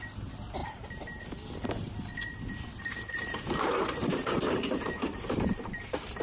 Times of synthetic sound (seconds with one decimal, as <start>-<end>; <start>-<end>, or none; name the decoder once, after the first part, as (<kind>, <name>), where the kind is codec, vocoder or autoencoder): 0.6-1.2 (vocoder, BigVGAN v2); 2.3-6.2